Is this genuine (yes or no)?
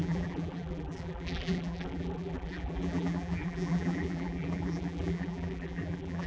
no